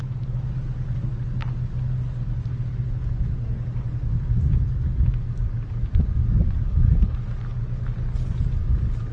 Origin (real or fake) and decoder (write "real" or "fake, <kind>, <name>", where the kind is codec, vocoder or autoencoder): real